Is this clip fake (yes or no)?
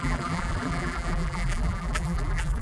yes